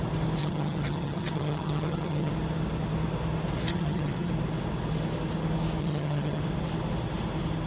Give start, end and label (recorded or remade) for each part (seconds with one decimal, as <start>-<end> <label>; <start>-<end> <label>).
0.0-0.4 recorded; 0.4-2.3 remade; 2.3-3.7 recorded; 3.7-4.3 remade; 4.3-5.8 recorded; 5.8-6.4 remade; 6.4-7.7 recorded